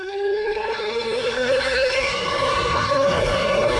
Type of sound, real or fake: fake